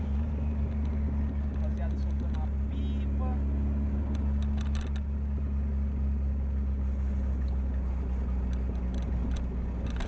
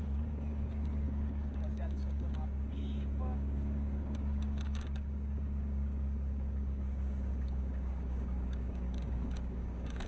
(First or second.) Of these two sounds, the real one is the first